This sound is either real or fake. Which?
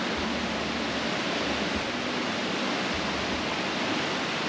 real